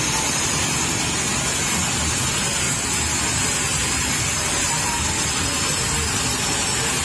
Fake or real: real